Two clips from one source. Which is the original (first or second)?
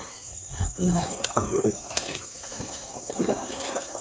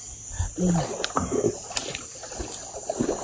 second